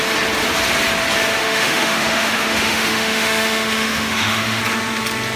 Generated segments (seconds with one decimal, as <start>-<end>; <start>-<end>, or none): 1.4-4.6